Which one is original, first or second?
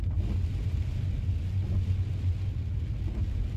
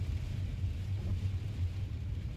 first